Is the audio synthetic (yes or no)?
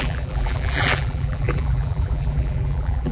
yes